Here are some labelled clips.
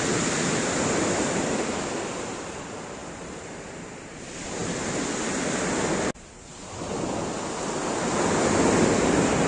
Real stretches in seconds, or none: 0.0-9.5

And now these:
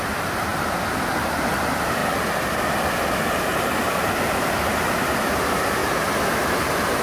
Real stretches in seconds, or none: 0.5-1.2; 2.0-4.3; 5.8-6.3

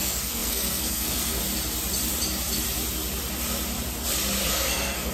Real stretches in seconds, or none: 1.4-4.5

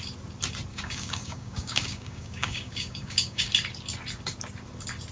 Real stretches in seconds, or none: 0.0-0.7; 3.5-5.1

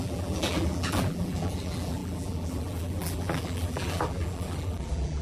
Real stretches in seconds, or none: none

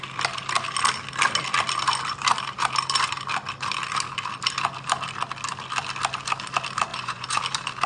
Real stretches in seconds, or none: 0.0-6.9; 7.4-7.9

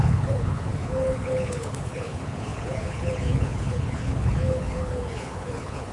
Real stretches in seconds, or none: none